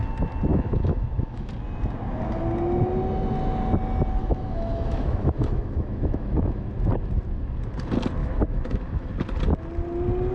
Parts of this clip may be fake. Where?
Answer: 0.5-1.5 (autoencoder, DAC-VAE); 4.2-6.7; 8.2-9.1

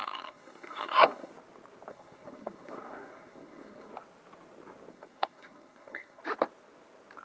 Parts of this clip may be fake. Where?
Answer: 0.0-1.3 (codec, SNAC); 1.9-3.9; 4.9-6.2